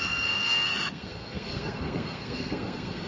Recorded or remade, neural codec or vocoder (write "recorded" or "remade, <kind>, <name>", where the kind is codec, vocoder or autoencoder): remade, codec, SNAC